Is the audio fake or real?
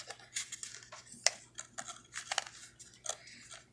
real